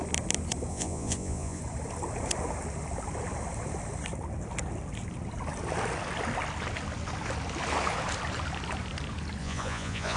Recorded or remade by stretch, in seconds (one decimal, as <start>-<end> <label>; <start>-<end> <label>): 0.0-0.7 recorded; 0.7-1.6 remade; 1.6-9.4 recorded; 9.4-10.2 remade